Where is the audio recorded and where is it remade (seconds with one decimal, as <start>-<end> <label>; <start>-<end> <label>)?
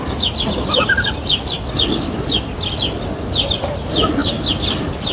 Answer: 0.0-5.1 recorded